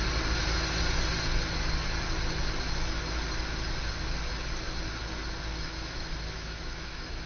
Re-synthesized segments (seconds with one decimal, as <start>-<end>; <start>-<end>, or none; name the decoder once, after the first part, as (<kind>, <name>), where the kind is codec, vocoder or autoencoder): 5.5-7.3 (autoencoder, DAC-VAE)